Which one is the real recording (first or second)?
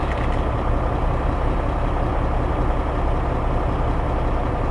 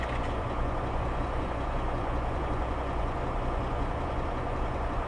first